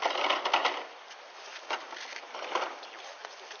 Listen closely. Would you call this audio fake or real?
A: real